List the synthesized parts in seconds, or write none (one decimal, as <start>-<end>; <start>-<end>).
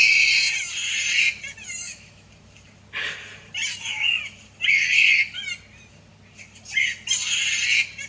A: 1.8-2.3